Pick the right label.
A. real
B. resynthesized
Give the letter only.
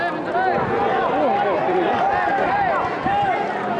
A